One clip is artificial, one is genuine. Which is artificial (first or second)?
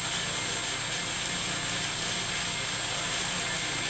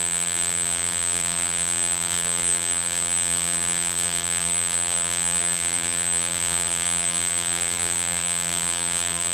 second